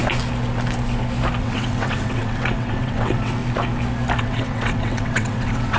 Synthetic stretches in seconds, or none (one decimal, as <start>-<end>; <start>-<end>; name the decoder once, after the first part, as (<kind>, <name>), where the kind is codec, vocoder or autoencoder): 1.4-3.4 (vocoder, WaveNeXt); 4.2-5.8